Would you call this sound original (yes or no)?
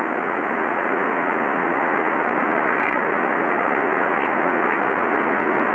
no